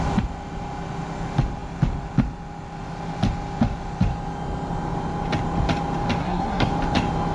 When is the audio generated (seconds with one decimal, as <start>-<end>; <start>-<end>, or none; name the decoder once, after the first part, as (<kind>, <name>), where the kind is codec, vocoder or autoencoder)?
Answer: 6.2-6.7 (codec, SNAC)

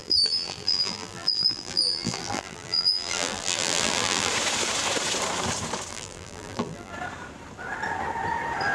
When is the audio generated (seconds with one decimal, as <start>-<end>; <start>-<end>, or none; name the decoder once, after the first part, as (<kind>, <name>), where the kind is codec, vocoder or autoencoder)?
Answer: 0.0-4.3 (vocoder, BigVGAN v2); 5.9-6.9